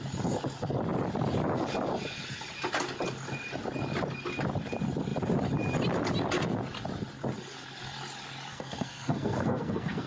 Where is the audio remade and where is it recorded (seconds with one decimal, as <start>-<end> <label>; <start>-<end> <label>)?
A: 0.0-8.5 recorded; 8.5-10.1 remade